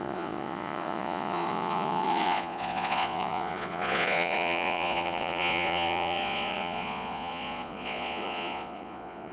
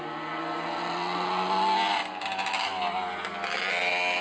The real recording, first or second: second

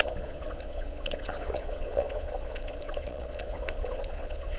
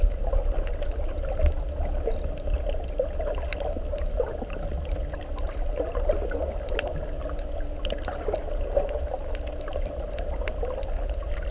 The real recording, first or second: second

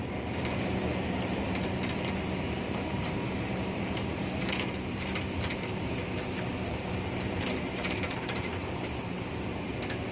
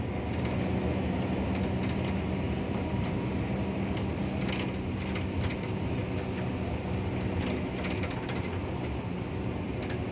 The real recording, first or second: second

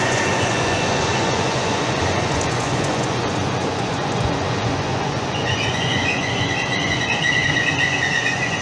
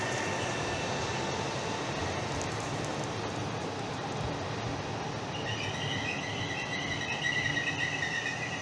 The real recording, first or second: second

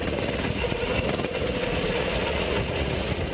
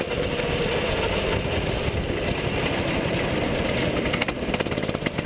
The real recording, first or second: second